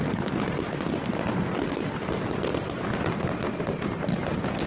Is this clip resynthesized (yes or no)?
no